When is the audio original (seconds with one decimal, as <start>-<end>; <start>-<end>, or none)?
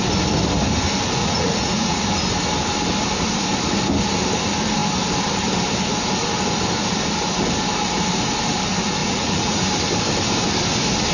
0.0-1.2; 2.0-9.0; 9.6-11.1